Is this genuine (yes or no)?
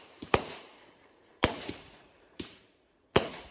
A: no